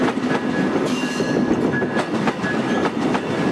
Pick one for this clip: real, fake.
real